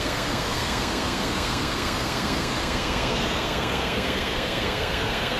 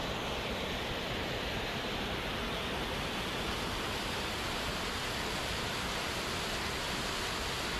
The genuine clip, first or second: second